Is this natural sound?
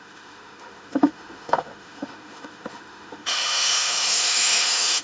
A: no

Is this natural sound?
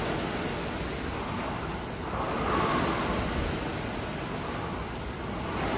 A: yes